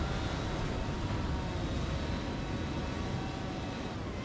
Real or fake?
real